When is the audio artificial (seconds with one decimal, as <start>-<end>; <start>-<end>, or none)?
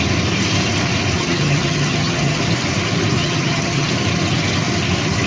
1.2-2.4; 3.2-3.9